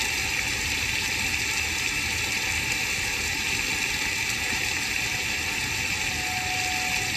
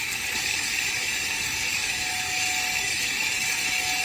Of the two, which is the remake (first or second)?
second